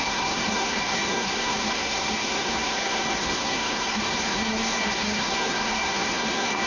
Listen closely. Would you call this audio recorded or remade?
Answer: remade